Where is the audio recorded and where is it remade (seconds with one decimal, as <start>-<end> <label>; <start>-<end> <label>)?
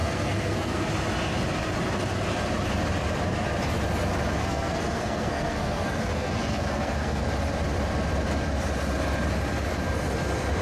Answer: 0.0-0.9 remade; 0.9-4.4 recorded; 4.4-7.2 remade; 7.2-10.6 recorded